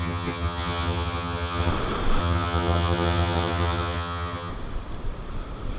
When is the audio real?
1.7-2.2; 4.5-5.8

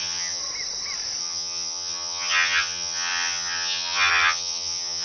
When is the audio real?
0.4-1.2

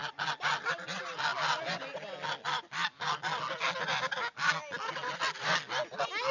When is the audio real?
0.0-6.3

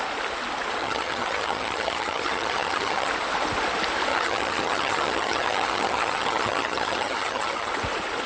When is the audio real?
0.0-0.8; 3.1-4.1; 7.7-8.3

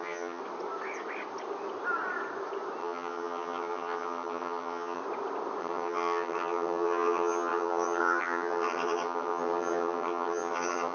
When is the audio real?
0.4-2.8; 5.0-5.6

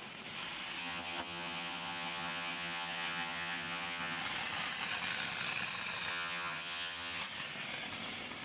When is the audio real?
0.0-0.8; 4.2-6.1; 7.2-8.4

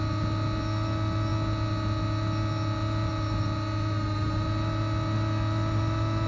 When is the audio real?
0.0-6.3

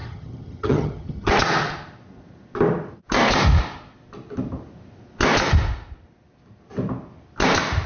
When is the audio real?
1.3-7.9